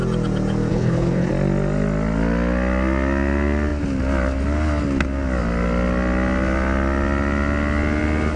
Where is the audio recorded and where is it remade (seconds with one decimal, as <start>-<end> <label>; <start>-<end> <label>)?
0.0-0.7 recorded; 0.7-1.3 remade; 1.3-8.4 recorded